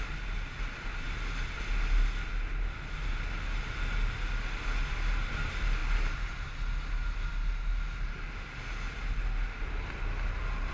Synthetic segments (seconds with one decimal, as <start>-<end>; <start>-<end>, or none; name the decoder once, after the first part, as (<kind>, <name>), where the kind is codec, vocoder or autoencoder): none